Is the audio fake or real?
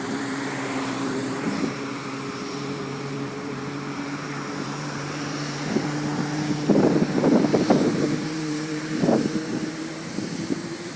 fake